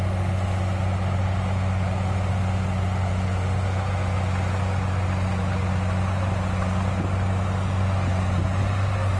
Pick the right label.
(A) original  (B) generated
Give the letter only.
A